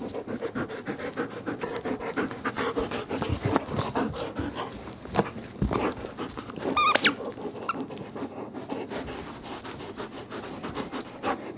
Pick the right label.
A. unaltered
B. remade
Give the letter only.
A